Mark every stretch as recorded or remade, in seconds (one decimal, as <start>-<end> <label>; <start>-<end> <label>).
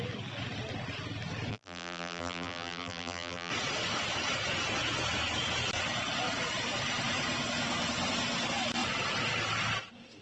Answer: 0.0-1.5 recorded; 1.5-3.5 remade; 3.5-10.2 recorded